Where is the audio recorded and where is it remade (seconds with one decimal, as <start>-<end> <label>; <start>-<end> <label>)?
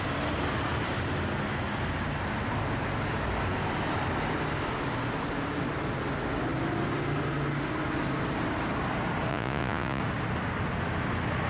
0.0-9.3 recorded; 9.3-10.0 remade; 10.0-11.5 recorded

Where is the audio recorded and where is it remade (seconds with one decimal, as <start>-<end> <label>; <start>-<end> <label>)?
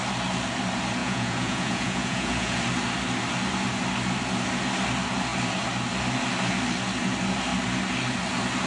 0.0-1.0 recorded; 1.0-2.6 remade; 2.6-8.7 recorded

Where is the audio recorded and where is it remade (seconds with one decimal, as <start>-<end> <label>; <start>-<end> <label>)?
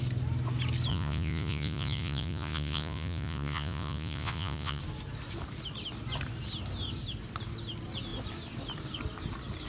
0.0-0.9 recorded; 0.9-4.8 remade; 4.8-9.7 recorded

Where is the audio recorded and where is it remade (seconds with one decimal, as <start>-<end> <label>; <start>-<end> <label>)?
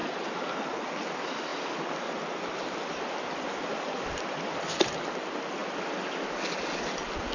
0.0-7.3 recorded